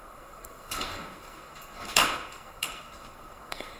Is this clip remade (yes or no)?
yes